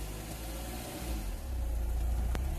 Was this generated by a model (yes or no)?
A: no